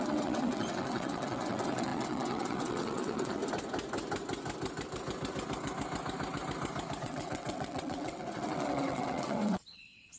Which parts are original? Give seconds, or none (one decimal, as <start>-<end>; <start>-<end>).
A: 3.4-7.0